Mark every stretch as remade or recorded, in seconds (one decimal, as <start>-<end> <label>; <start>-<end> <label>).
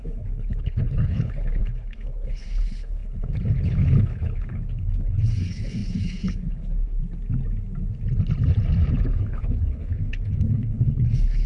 0.0-7.0 remade; 7.0-9.0 recorded; 9.0-11.5 remade